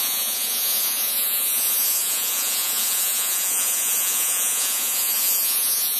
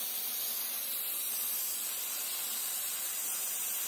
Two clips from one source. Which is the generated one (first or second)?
first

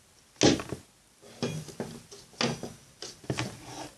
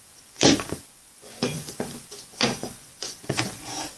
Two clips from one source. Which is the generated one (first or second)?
second